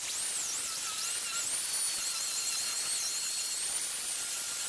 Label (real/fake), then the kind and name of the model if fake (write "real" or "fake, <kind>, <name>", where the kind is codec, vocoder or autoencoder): real